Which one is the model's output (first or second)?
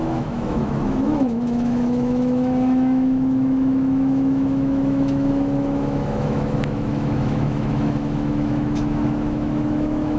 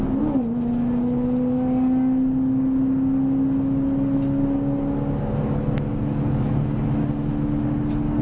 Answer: first